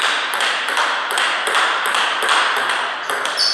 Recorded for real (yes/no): yes